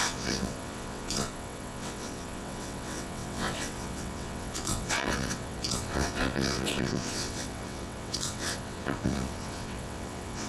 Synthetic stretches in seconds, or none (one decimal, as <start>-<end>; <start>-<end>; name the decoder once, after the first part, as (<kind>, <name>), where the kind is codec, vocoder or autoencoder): 0.0-10.5 (vocoder, WaveNeXt)